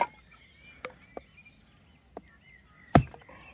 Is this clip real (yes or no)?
yes